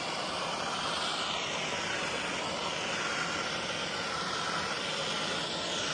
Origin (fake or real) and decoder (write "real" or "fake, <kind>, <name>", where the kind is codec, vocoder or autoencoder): real